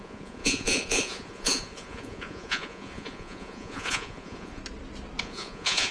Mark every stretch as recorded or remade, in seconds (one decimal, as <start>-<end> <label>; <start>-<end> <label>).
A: 0.0-4.6 remade; 4.6-5.2 recorded; 5.2-5.9 remade

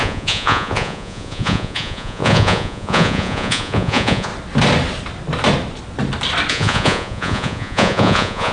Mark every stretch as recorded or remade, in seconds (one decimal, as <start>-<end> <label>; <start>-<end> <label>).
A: 0.0-4.3 remade; 4.3-6.5 recorded; 6.5-8.5 remade

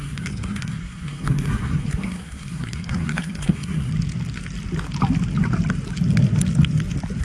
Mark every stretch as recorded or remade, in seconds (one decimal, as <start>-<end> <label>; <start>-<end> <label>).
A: 0.0-3.9 remade; 3.9-7.2 recorded

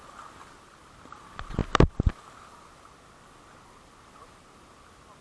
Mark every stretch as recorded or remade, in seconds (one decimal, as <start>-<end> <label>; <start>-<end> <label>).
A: 0.0-5.2 recorded